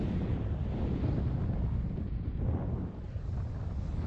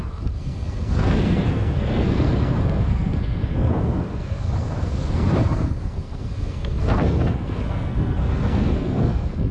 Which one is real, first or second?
first